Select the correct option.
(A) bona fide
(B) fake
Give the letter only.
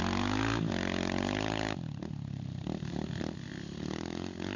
A